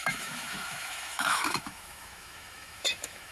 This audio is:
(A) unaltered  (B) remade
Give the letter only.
B